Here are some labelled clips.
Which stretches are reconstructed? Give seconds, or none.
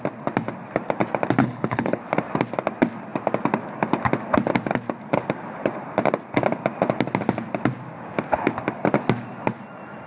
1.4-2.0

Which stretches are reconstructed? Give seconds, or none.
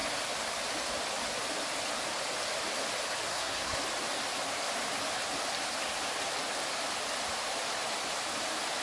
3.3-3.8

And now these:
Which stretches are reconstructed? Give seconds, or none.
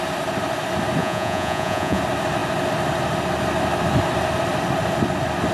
1.0-2.0